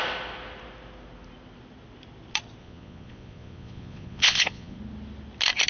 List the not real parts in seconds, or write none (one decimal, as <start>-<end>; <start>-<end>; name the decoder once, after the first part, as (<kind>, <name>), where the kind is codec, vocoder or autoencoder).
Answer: 2.6-4.8 (vocoder, Vocos)